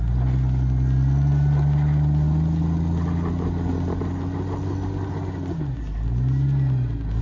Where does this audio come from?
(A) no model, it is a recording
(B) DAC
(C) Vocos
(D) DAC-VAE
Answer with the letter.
A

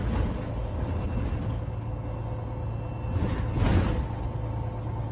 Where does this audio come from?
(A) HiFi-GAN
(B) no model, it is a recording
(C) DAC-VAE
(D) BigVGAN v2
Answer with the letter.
B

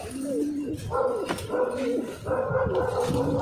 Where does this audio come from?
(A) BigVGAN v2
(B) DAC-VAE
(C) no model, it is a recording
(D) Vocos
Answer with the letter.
C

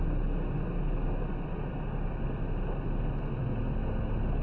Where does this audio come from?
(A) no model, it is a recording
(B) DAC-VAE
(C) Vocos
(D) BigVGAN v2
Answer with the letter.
A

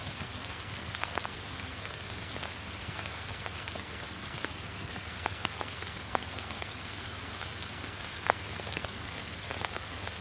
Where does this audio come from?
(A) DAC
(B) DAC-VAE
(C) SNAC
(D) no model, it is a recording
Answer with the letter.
C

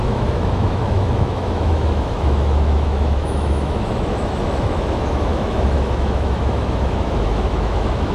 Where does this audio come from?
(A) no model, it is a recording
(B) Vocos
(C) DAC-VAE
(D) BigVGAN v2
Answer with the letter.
C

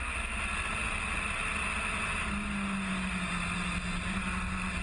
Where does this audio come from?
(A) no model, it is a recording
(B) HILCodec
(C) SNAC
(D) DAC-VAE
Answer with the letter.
A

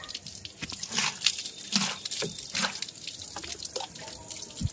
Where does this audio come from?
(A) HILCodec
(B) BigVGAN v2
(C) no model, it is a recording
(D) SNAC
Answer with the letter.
C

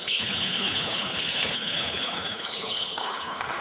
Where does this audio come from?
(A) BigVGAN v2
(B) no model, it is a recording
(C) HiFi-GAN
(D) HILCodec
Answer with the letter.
D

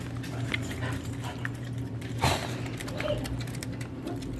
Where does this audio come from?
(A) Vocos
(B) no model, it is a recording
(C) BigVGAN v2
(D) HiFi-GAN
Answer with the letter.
C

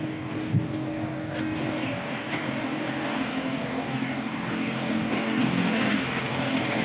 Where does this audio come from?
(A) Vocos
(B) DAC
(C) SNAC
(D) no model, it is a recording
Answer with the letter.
B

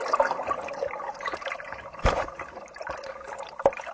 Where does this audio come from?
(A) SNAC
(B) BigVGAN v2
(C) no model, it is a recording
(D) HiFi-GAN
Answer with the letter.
C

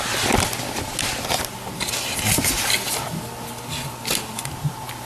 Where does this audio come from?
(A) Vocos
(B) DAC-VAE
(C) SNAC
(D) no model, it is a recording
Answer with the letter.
D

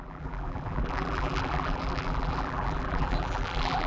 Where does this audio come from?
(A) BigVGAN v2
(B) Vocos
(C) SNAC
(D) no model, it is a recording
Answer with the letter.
A